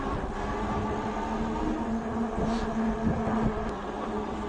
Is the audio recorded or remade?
recorded